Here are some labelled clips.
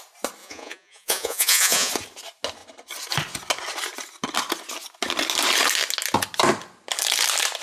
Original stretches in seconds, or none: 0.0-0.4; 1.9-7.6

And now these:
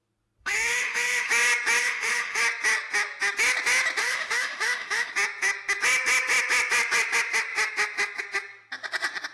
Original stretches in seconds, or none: 0.0-0.4; 1.3-1.8; 2.4-4.0; 5.1-9.3

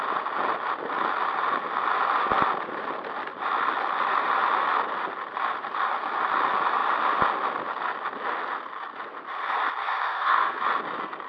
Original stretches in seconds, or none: 0.0-9.8; 10.6-11.3

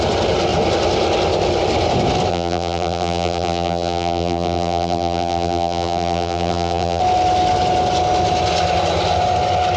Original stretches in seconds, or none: 0.0-2.3; 7.0-9.8

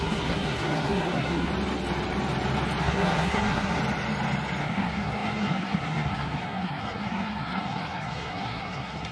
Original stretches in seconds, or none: 1.5-2.8; 3.8-4.6